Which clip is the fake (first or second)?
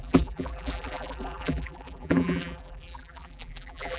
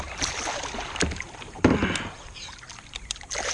first